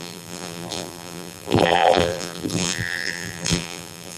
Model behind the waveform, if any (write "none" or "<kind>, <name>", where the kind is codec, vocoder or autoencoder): vocoder, BigVGAN v2